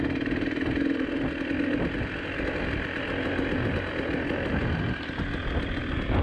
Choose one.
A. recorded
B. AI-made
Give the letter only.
A